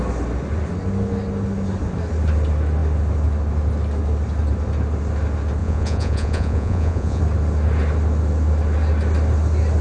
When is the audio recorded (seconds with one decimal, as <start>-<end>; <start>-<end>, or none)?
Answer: 0.0-5.6; 7.2-9.8